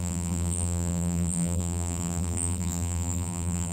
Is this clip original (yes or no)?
no